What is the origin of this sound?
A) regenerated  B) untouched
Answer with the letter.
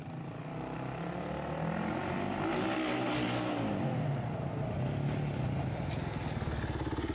B